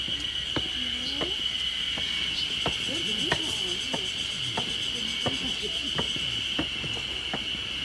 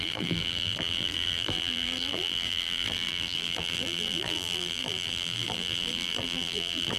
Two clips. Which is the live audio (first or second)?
first